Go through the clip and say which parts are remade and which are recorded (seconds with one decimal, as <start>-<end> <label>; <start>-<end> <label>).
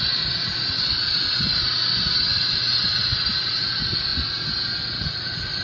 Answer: 0.0-5.6 recorded